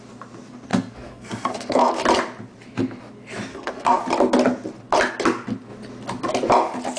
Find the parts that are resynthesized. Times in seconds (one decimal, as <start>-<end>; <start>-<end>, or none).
0.7-2.0; 3.5-4.0